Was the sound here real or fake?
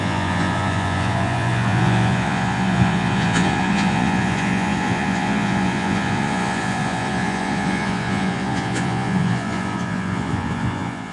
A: fake